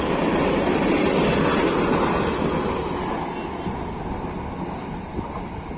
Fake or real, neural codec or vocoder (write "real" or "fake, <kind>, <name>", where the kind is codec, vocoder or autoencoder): real